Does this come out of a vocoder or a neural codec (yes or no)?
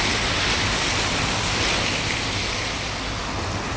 no